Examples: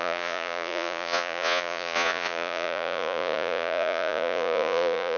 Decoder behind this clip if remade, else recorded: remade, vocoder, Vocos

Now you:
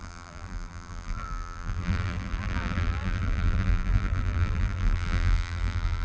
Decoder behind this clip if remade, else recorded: remade, vocoder, BigVGAN v2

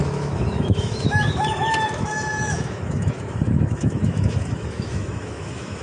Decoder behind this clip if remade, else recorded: remade, autoencoder, DAC-VAE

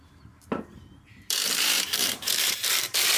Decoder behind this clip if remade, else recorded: remade, vocoder, BigVGAN v2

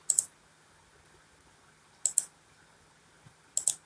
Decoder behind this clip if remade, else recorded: recorded